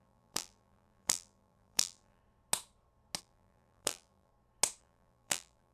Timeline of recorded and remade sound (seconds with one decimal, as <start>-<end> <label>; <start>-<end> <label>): 0.0-2.2 remade; 2.2-3.2 recorded; 3.2-4.3 remade; 4.3-4.8 recorded; 4.8-5.7 remade